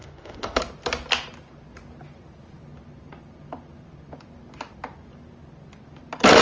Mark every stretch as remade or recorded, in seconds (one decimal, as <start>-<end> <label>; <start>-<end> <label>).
0.0-0.6 remade; 0.6-6.4 recorded